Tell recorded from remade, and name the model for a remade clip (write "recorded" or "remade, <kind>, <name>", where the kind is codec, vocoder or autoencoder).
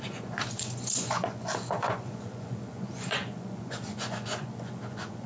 remade, vocoder, Vocos